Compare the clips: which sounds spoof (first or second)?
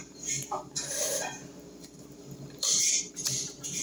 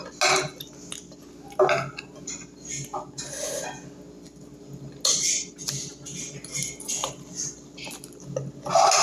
first